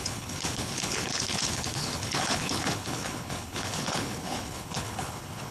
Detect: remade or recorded remade